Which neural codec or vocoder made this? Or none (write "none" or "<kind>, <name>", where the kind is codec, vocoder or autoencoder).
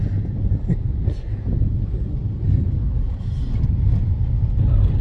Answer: none